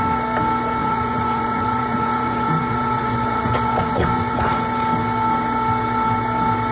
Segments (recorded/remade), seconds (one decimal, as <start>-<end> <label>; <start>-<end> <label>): 0.0-0.8 recorded; 0.8-4.6 remade; 4.6-6.7 recorded

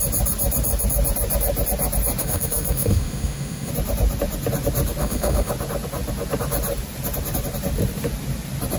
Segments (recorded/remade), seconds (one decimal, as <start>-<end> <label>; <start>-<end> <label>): 0.0-2.2 recorded; 2.2-3.7 remade; 3.7-5.0 recorded; 5.0-5.5 remade; 5.5-8.8 recorded

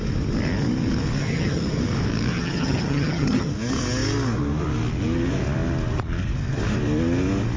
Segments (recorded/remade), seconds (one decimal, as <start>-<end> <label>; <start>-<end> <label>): 0.0-1.2 recorded; 1.2-1.8 remade; 1.8-2.3 recorded; 2.3-3.5 remade; 3.5-7.6 recorded

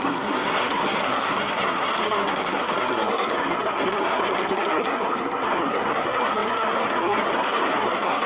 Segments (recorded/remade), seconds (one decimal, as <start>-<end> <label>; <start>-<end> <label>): 0.0-8.3 remade

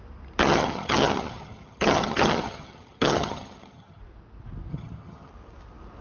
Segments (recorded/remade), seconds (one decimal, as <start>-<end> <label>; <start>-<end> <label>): 0.0-0.4 recorded; 0.4-4.0 remade; 4.0-4.7 recorded; 4.7-5.3 remade; 5.3-6.0 recorded

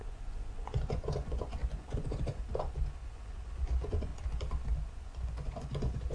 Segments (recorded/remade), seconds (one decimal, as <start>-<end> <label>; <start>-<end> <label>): 0.0-4.1 remade; 4.1-4.9 recorded; 4.9-6.1 remade